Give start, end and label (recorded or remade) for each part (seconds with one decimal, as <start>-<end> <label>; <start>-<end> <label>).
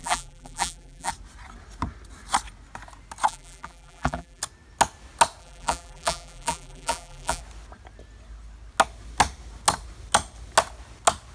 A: 0.0-1.1 remade; 1.1-3.3 recorded; 3.3-4.4 remade; 4.4-5.4 recorded; 5.4-7.4 remade; 7.4-11.3 recorded